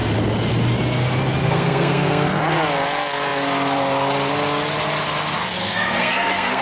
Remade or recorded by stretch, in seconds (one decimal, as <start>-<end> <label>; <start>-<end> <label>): 0.0-1.4 recorded; 1.4-2.4 remade; 2.4-5.6 recorded; 5.6-6.6 remade